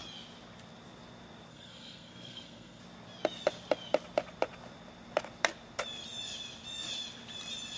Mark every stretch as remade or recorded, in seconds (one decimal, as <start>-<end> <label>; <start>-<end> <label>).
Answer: 0.0-1.5 recorded; 1.5-2.8 remade; 2.8-7.8 recorded